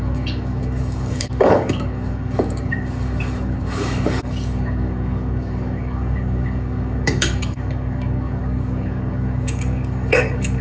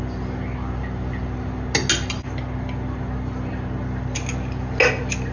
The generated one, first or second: first